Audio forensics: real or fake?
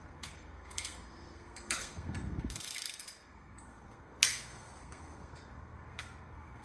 fake